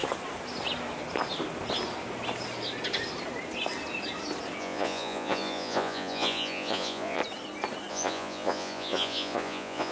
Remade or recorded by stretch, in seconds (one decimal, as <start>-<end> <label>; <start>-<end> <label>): 0.0-4.6 recorded; 4.6-7.2 remade; 7.2-7.9 recorded; 7.9-9.9 remade